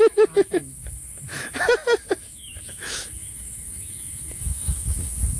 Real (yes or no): no